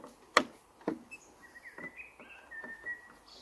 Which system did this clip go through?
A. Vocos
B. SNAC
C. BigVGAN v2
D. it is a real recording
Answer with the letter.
D